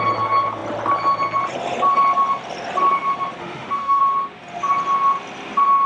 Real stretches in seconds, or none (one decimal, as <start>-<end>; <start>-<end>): 0.0-3.4; 4.0-5.9